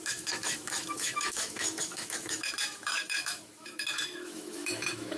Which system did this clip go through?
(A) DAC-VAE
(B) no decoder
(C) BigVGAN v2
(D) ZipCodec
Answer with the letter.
A